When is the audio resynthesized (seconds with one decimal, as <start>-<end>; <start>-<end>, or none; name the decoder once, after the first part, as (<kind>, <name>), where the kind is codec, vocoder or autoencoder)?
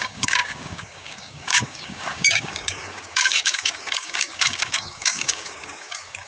0.0-6.3 (codec, DAC)